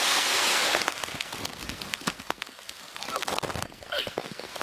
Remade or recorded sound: remade